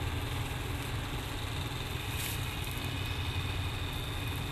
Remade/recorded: recorded